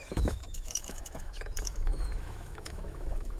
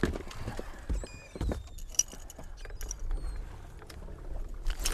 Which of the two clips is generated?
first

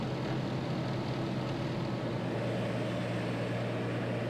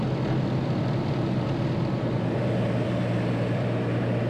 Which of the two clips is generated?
second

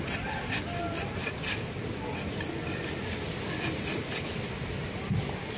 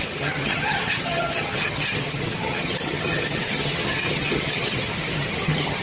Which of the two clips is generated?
second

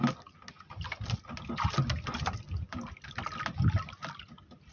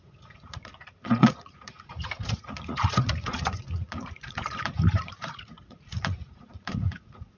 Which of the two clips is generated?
second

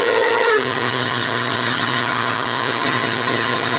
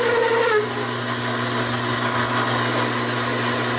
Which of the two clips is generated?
first